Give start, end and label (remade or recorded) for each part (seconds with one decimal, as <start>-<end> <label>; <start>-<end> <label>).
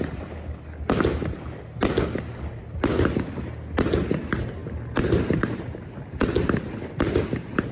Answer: 0.0-7.7 recorded